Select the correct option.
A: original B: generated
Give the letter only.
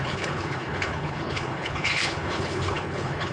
B